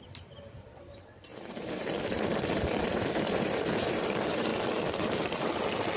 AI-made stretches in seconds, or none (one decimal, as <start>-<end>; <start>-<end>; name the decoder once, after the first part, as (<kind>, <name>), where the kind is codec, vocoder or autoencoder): 0.0-4.5 (vocoder, BigVGAN v2)